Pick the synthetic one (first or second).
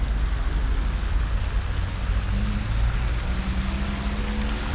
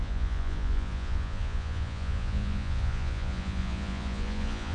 second